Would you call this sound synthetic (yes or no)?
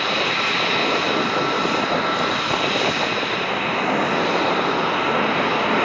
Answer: no